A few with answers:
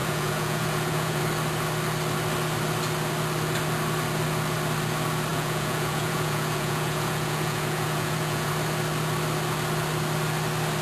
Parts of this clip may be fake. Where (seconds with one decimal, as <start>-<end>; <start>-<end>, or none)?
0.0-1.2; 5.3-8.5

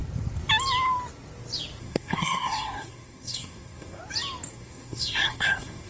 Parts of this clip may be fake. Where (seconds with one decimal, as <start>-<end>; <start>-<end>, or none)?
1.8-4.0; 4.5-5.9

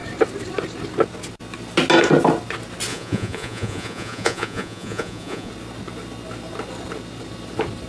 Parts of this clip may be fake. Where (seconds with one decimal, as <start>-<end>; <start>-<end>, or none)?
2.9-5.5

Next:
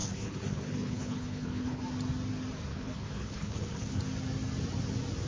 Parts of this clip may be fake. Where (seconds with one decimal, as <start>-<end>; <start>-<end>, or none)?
0.0-1.8; 2.7-4.0

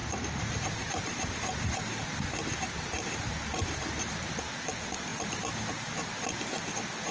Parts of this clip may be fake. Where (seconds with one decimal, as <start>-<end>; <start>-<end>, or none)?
0.0-1.3